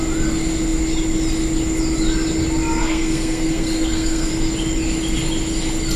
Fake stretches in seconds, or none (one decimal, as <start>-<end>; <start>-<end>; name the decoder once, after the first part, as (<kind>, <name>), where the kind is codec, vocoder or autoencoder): 2.8-4.3 (codec, SNAC)